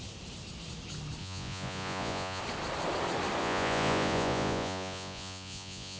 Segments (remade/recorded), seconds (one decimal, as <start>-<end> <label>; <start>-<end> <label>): 0.0-1.2 recorded; 1.2-2.4 remade; 2.4-3.4 recorded; 3.4-6.0 remade